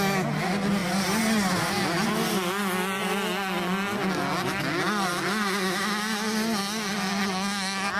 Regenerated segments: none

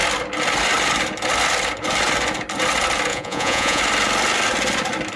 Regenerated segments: 3.1-3.8 (vocoder, Vocos)

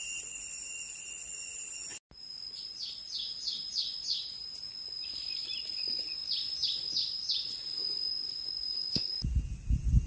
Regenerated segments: none

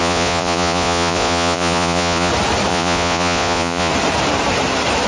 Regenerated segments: 0.0-2.3 (vocoder, Vocos); 2.7-3.9